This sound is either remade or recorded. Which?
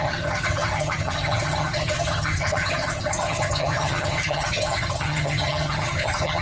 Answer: remade